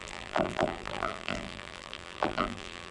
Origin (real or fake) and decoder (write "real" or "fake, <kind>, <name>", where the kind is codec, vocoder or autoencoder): fake, vocoder, BigVGAN v2